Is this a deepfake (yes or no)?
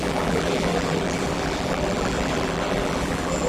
yes